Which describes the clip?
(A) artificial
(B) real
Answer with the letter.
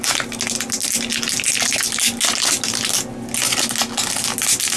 B